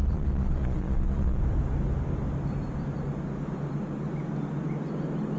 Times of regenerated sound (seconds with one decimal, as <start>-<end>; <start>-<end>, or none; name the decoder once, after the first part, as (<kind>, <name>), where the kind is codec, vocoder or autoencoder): 0.0-1.4 (vocoder, Vocos)